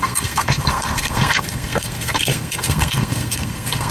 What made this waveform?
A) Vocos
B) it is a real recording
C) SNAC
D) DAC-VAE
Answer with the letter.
C